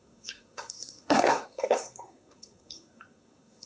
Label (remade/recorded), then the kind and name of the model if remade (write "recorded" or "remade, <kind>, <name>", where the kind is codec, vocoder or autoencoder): remade, codec, SNAC